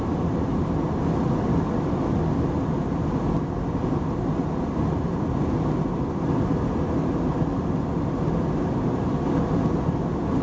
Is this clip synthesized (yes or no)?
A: no